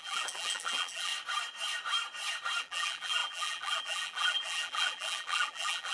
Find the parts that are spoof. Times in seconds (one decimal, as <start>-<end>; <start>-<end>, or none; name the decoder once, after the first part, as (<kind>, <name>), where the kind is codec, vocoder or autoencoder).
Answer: 0.0-1.1 (vocoder, BigVGAN v2); 2.6-5.9